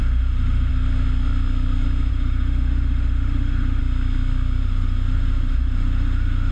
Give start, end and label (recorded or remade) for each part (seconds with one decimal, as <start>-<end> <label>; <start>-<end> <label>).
0.0-0.7 remade; 0.7-2.1 recorded; 2.1-3.8 remade; 3.8-4.6 recorded; 4.6-6.5 remade